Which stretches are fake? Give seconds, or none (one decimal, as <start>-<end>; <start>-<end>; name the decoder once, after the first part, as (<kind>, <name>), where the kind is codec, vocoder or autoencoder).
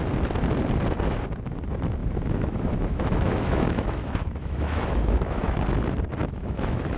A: 2.0-5.6 (autoencoder, DAC-VAE); 6.2-7.0